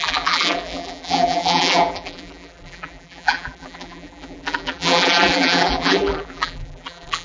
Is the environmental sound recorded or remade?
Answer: remade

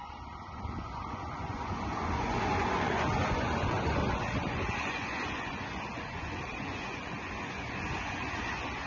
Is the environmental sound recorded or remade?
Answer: remade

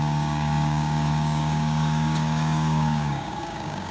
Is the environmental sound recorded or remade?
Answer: remade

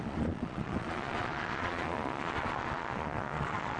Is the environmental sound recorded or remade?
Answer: remade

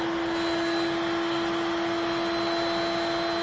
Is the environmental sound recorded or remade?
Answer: recorded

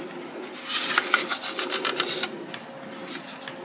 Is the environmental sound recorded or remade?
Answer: recorded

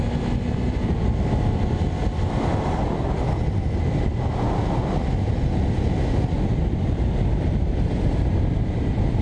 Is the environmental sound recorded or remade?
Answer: recorded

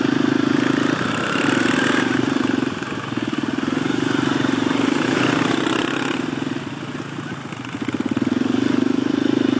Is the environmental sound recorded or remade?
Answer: recorded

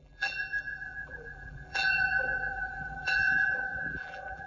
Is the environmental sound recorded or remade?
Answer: remade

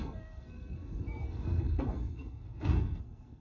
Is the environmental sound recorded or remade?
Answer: remade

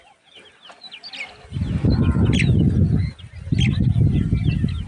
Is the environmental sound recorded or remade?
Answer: recorded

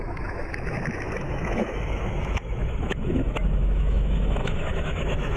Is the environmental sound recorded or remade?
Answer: remade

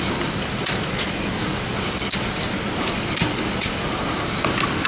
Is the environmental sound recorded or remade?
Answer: recorded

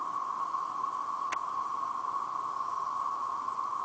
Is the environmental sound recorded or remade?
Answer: recorded